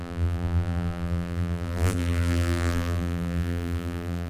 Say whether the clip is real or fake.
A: fake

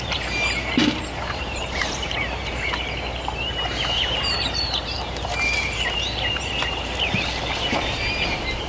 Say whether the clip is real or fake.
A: fake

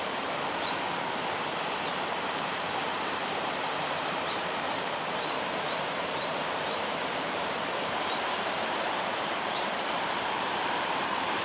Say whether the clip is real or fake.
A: fake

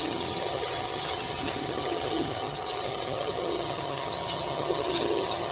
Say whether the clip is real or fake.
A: fake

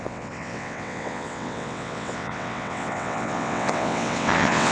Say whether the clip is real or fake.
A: fake